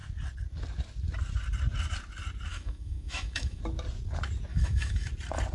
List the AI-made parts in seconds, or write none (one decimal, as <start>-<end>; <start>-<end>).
2.5-3.6; 4.5-5.1